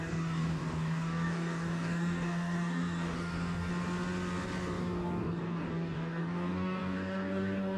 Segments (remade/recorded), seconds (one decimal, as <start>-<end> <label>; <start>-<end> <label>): 0.0-3.7 remade; 3.7-4.8 recorded; 4.8-7.8 remade

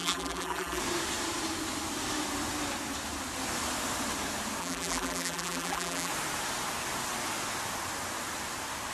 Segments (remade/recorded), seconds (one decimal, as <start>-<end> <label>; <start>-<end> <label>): 0.0-0.8 remade; 0.8-4.6 recorded; 4.6-6.1 remade; 6.1-8.9 recorded

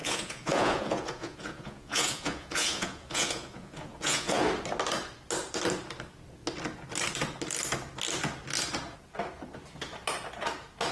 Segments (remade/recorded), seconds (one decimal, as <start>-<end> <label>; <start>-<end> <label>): 0.0-4.4 remade; 4.4-10.9 recorded